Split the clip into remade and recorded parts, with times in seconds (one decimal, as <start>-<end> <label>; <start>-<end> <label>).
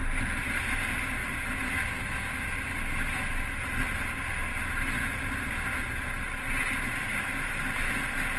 0.0-8.4 recorded